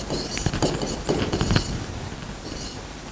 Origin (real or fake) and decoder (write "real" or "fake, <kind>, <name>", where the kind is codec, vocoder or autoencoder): real